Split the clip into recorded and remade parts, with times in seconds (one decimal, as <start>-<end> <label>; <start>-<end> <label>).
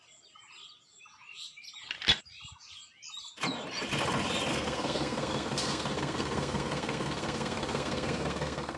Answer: 0.0-4.5 recorded; 4.5-8.8 remade